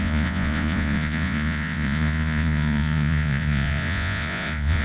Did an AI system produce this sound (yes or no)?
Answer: yes